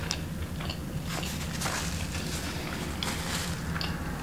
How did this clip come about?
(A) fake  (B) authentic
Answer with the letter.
B